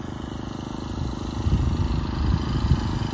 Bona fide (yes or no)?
yes